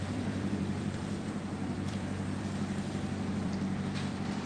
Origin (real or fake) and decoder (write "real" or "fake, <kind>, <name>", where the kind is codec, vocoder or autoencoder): fake, vocoder, BigVGAN v2